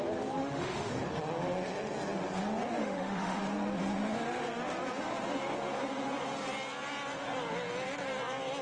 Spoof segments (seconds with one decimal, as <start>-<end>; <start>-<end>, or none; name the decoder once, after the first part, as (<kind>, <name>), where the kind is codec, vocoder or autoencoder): 0.4-0.9 (autoencoder, DAC-VAE); 2.8-3.4